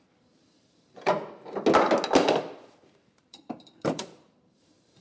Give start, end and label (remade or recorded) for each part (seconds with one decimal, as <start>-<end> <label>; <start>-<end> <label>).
0.0-1.2 remade; 1.2-2.7 recorded; 2.7-5.0 remade